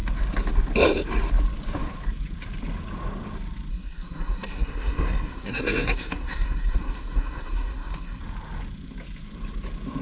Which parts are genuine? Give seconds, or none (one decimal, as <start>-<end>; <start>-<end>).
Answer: 0.0-3.7; 8.2-10.0